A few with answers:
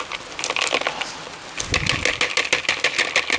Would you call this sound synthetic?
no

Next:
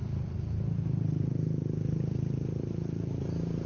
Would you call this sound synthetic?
no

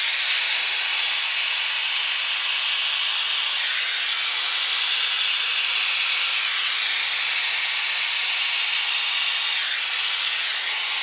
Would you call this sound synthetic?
no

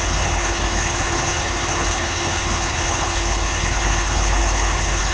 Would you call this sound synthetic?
yes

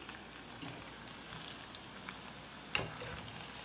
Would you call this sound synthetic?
no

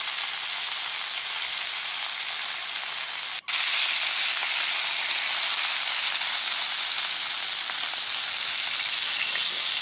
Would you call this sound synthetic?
no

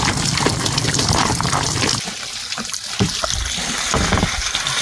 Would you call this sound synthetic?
no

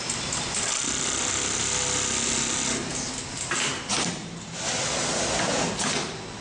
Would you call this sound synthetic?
no